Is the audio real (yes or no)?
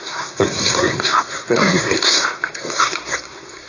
no